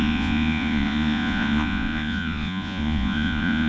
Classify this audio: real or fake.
fake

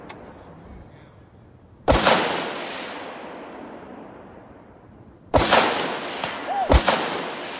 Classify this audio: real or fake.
real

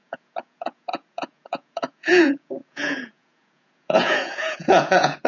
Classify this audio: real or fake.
fake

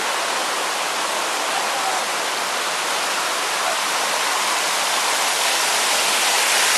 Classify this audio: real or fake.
real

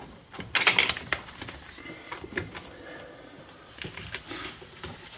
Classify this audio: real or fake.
real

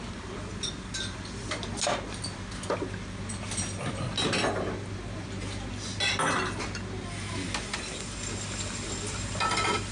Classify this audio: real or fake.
real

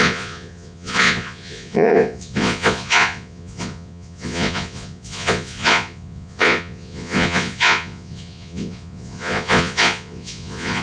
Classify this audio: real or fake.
fake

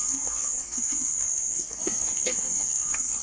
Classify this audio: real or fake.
fake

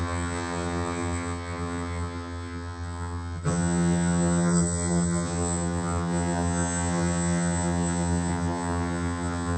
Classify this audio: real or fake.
fake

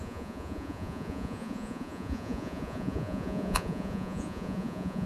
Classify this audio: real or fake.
fake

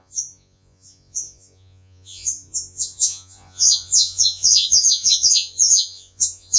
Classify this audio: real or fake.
fake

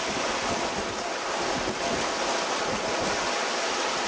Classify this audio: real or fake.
real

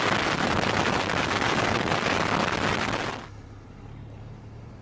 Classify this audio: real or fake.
real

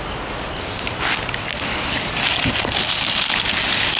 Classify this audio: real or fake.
real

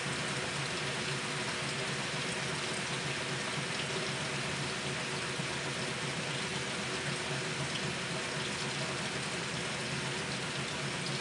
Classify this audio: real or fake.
real